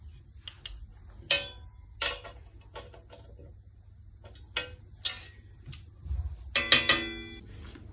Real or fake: real